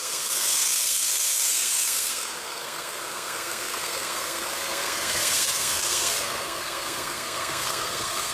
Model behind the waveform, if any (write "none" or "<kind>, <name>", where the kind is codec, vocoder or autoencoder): codec, SNAC